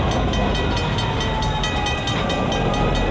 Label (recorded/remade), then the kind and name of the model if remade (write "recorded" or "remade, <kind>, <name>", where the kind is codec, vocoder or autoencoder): recorded